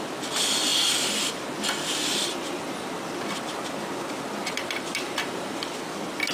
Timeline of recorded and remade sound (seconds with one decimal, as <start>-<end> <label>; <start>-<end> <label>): 0.0-4.4 recorded; 4.4-5.7 remade; 5.7-6.3 recorded